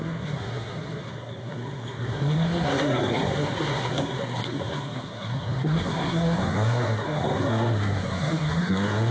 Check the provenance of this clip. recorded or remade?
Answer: remade